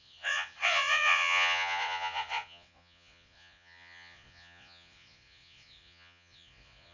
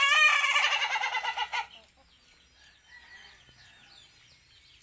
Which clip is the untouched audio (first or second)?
second